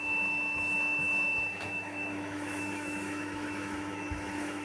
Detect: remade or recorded remade